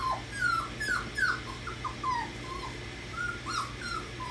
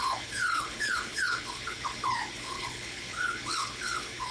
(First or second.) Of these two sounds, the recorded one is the first